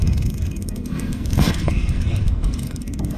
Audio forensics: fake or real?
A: fake